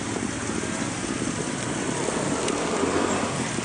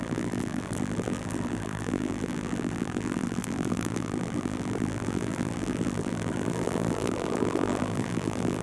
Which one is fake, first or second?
second